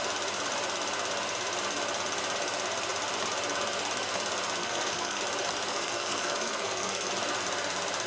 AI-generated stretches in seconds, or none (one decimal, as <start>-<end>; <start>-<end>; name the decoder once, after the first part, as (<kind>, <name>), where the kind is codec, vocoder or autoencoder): 4.6-5.2 (codec, SNAC); 5.7-7.1